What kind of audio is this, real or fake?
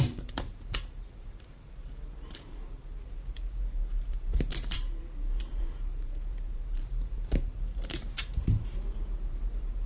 fake